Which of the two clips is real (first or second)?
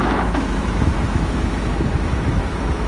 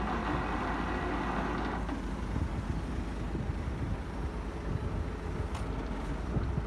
second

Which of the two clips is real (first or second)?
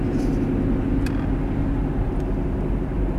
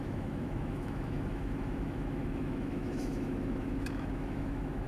first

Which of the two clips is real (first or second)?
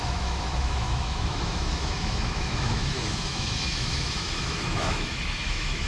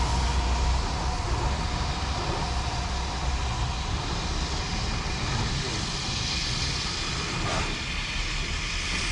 second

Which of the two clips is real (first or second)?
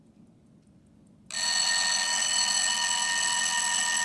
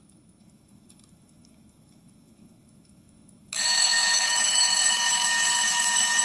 first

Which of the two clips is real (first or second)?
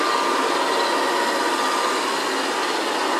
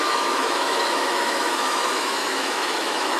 first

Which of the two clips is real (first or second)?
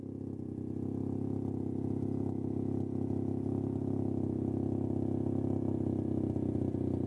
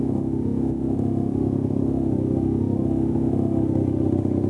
first